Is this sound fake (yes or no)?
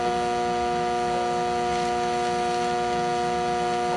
no